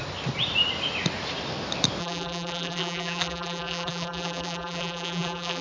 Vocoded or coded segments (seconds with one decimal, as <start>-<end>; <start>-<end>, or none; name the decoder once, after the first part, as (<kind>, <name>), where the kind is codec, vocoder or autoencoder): 2.0-5.6 (vocoder, BigVGAN v2)